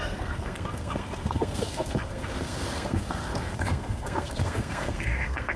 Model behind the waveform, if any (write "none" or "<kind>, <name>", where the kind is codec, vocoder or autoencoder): codec, SNAC